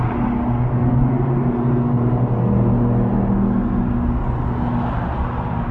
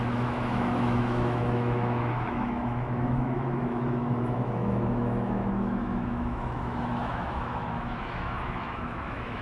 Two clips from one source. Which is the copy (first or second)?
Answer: second